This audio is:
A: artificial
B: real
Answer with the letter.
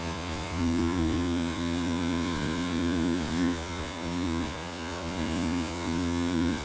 A